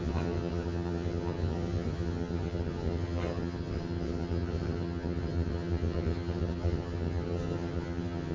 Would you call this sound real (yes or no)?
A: no